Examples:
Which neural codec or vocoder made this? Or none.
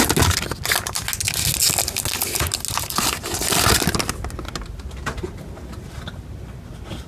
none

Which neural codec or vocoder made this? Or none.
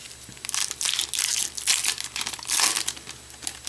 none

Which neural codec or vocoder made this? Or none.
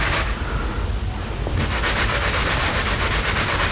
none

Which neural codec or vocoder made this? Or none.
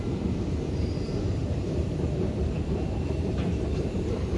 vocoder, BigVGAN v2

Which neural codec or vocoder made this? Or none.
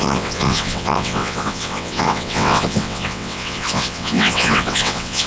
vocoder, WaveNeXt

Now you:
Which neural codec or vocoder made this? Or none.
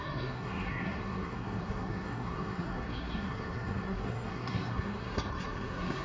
codec, SNAC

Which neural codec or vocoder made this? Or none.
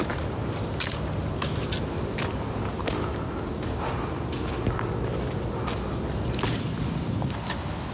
none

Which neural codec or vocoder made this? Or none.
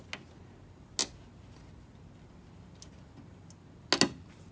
none